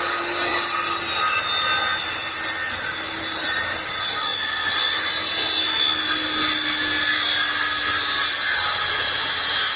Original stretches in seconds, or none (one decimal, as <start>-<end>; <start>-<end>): 0.0-9.8